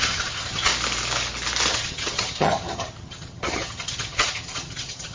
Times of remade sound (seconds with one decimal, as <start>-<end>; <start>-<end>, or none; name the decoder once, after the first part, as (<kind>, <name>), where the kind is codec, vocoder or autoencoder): 0.0-0.7 (vocoder, HiFi-GAN); 1.7-5.1